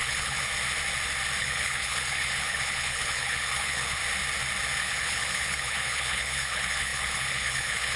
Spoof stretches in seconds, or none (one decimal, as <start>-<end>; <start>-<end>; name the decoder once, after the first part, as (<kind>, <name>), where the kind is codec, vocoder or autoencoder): 0.0-0.5 (codec, HILCodec); 1.4-4.0; 4.8-8.0